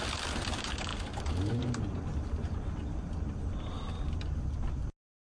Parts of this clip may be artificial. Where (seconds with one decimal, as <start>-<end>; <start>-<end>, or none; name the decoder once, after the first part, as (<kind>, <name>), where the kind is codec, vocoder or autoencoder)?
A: none